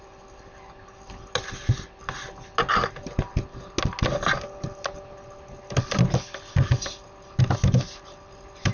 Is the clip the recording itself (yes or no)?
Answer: yes